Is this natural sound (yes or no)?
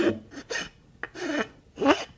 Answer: yes